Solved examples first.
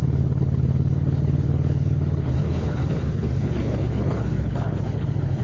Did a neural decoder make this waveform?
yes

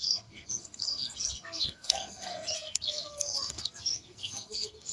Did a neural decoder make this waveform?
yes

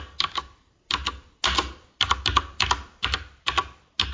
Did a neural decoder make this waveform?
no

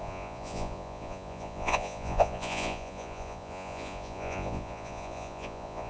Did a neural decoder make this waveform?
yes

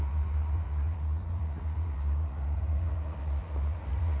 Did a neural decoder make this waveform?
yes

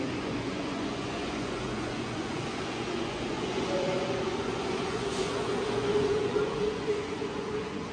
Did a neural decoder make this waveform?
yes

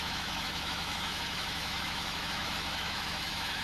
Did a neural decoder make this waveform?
yes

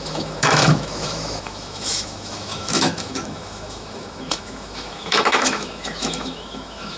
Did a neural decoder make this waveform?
yes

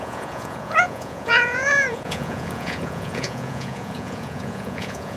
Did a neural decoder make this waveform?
yes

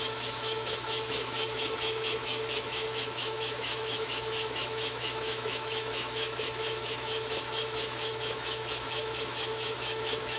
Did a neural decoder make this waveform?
yes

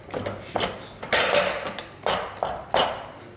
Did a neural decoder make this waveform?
no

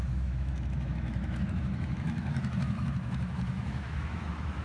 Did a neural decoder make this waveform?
yes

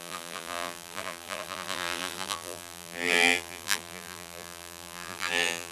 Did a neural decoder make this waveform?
yes